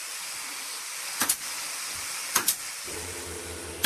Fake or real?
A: real